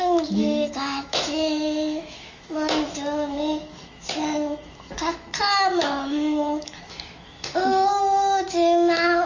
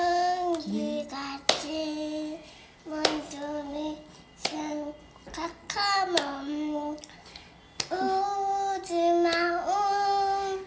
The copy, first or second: first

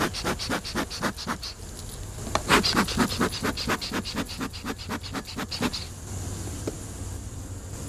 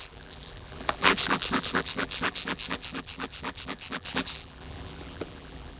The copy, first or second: second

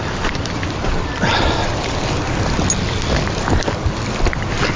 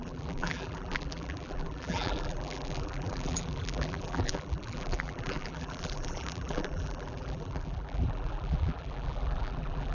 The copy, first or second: second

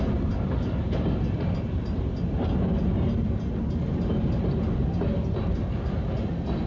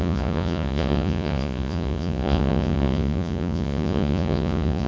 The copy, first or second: second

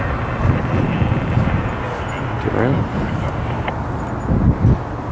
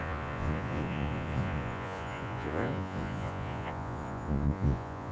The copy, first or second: second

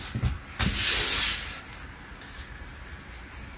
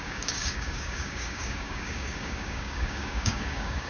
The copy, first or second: second